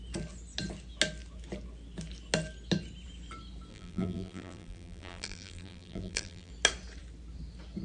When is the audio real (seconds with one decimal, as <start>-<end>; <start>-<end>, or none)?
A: 0.0-3.7; 6.5-7.8